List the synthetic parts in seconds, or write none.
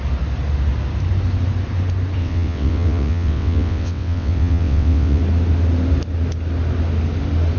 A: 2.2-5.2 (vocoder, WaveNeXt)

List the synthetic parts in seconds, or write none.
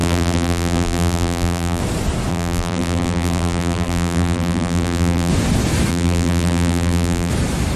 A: 0.0-1.8 (vocoder, BigVGAN v2); 2.3-5.3; 5.9-7.3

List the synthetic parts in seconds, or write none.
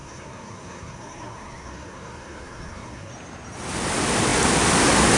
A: 0.0-3.1 (codec, SNAC)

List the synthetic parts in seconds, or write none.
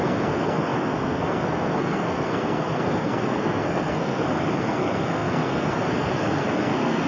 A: 0.0-7.1 (codec, SNAC)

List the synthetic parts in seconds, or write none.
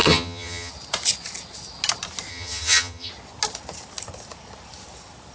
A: 0.0-0.7 (vocoder, HiFi-GAN); 2.3-3.1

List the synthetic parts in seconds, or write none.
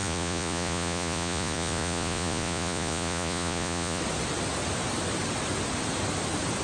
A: 0.0-4.0 (vocoder, Vocos)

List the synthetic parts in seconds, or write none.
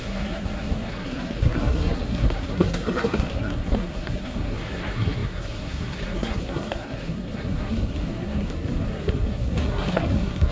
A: 0.0-10.5 (codec, SNAC)